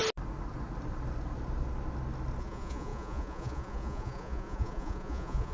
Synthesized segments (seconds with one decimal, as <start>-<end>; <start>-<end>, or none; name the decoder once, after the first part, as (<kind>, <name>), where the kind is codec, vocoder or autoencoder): 2.4-5.5 (vocoder, Vocos)